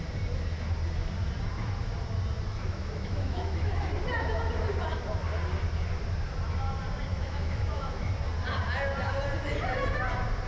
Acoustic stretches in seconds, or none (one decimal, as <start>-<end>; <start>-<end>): 0.0-2.5; 3.9-7.1; 8.1-10.5